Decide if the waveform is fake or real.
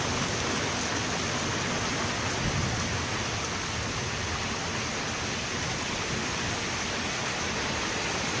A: real